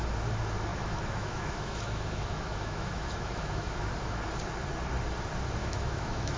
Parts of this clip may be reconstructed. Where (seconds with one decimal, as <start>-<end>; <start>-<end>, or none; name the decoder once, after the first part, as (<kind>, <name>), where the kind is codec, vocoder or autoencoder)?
0.7-3.9 (autoencoder, DAC-VAE); 5.6-6.4